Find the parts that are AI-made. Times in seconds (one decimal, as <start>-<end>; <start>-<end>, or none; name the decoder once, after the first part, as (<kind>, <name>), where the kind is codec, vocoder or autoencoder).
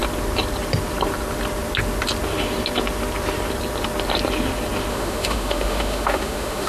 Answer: 4.9-6.7 (autoencoder, DAC-VAE)